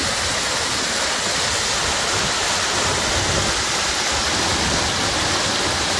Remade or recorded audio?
recorded